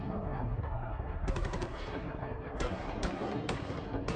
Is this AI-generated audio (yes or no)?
yes